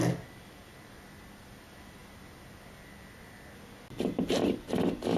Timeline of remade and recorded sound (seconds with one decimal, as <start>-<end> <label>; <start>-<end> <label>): 0.0-5.2 recorded